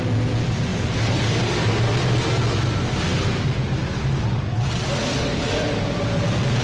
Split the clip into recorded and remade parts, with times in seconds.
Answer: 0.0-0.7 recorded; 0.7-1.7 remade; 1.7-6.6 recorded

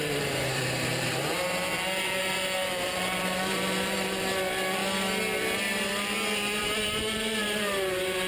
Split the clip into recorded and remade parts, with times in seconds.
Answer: 0.0-4.8 remade; 4.8-6.6 recorded; 6.6-8.3 remade